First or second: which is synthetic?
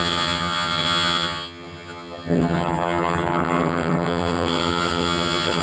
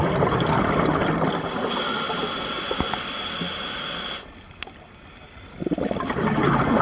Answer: first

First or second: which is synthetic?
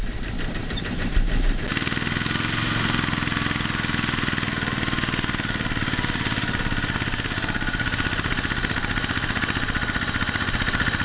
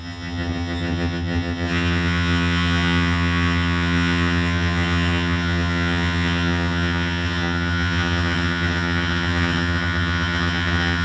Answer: second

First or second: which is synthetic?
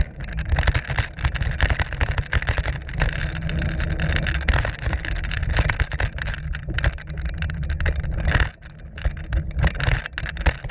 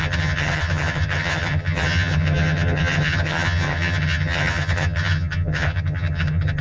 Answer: second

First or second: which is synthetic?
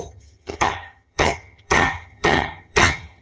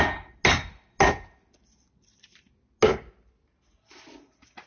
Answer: first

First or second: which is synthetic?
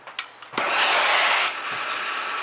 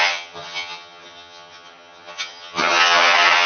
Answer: second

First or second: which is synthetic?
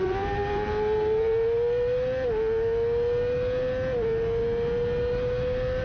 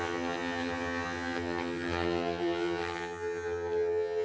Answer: second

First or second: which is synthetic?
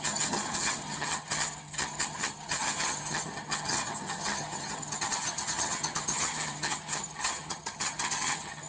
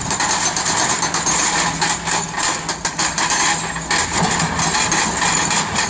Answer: first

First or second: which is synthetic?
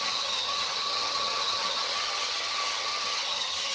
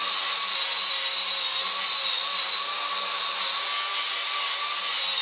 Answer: first